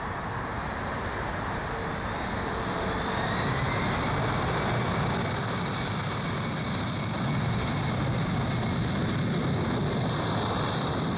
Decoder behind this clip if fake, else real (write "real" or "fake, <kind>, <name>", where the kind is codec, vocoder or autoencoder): real